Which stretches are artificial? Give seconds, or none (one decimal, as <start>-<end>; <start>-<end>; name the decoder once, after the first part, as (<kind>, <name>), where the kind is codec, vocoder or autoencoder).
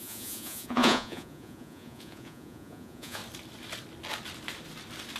0.0-3.2 (vocoder, Vocos)